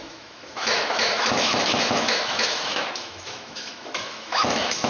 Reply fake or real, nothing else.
fake